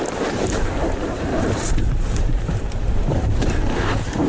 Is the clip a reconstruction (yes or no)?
yes